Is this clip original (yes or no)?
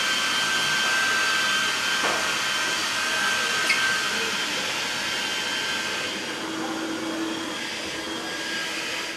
yes